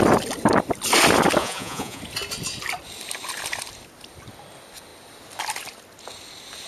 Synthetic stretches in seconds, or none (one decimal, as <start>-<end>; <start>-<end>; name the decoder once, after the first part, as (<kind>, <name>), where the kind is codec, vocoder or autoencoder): 1.4-2.0 (vocoder, Vocos)